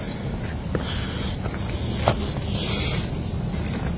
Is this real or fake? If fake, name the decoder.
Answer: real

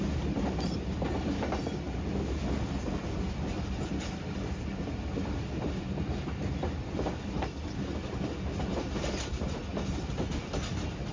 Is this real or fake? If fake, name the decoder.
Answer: real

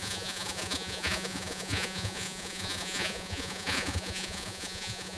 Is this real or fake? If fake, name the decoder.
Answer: fake, vocoder, Vocos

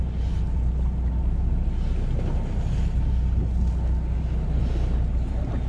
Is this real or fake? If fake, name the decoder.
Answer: real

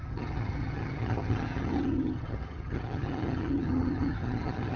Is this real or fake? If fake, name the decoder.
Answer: fake, vocoder, HiFi-GAN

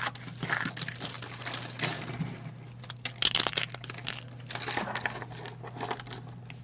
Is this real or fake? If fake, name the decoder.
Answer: real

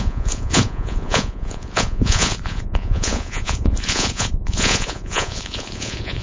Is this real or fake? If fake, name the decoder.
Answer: fake, vocoder, Vocos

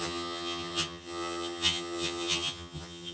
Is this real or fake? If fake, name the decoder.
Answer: fake, vocoder, HiFi-GAN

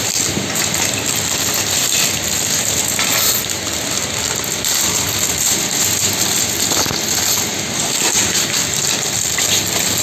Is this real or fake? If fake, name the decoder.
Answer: real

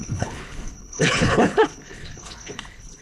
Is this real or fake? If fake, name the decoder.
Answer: fake, codec, HILCodec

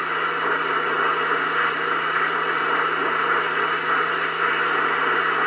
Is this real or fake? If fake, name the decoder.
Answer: real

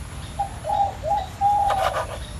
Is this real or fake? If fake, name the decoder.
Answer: real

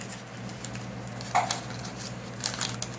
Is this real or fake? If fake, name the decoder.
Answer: real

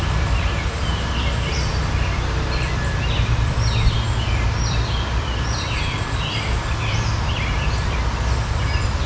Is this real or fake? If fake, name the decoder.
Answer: fake, vocoder, BigVGAN v2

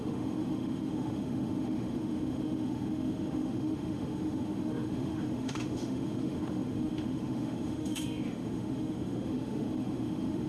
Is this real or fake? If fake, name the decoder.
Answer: fake, autoencoder, DAC-VAE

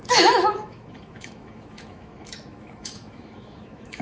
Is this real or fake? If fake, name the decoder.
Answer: fake, autoencoder, DAC-VAE